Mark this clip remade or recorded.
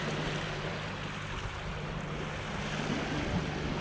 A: recorded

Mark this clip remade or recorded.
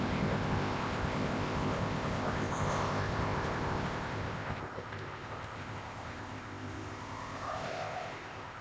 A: remade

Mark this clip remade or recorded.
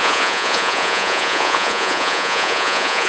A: remade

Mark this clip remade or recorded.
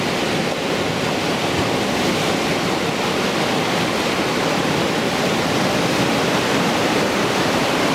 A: recorded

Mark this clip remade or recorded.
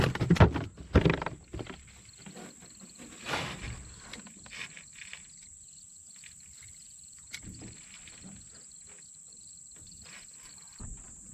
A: recorded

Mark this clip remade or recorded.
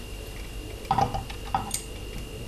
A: recorded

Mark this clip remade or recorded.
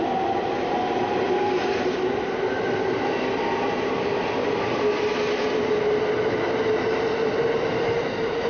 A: recorded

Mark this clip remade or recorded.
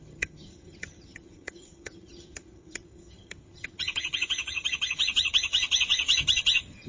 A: remade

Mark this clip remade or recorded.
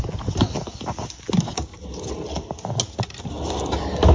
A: recorded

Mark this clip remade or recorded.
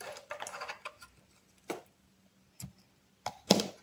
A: recorded